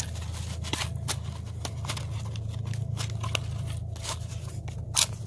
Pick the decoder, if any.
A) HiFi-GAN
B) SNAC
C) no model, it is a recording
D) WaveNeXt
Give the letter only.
C